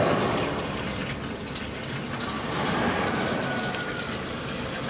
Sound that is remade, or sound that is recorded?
recorded